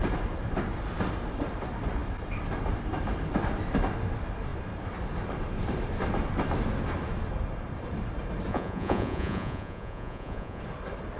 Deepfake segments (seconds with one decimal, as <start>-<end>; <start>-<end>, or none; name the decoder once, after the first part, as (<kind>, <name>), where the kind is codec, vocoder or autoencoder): 8.5-10.6 (vocoder, Vocos)